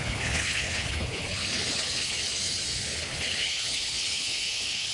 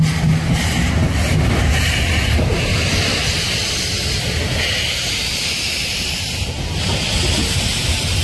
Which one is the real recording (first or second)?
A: second